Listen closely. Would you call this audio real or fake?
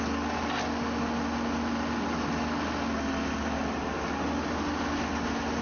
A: real